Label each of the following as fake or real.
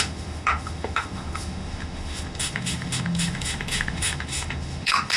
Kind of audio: fake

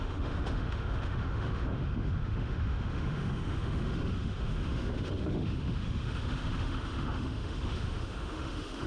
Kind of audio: fake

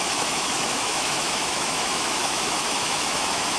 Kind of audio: fake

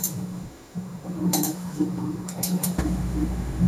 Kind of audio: fake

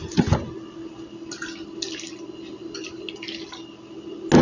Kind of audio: real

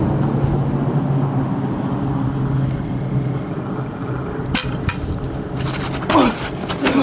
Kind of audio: real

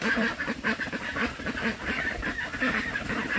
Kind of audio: real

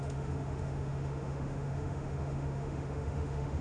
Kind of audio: fake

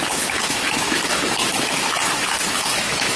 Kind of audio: fake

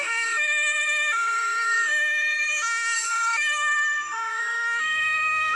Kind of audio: fake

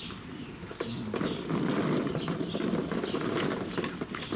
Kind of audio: real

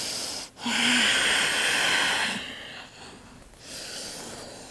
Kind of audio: real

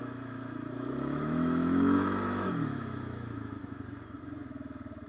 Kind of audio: fake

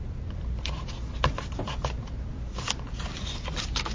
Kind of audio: real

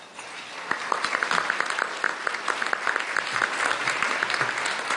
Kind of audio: real